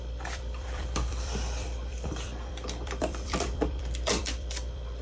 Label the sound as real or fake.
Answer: fake